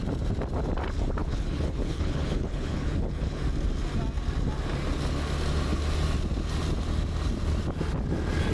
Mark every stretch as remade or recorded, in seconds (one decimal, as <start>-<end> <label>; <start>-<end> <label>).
0.0-1.2 recorded; 1.2-3.4 remade; 3.4-8.5 recorded